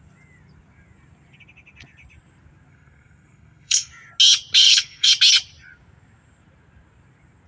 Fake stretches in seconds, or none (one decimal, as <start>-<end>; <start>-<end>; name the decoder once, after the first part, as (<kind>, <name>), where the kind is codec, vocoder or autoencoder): 2.7-3.9 (codec, SNAC); 4.6-5.1